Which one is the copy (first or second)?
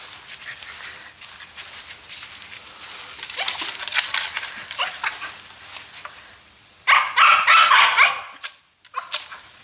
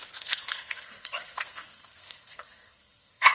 second